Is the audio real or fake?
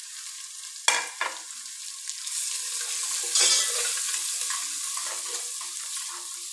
real